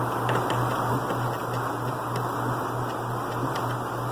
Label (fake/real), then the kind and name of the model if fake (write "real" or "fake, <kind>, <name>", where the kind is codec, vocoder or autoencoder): real